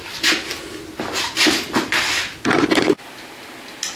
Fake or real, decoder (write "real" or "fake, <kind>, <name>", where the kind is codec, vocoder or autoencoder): real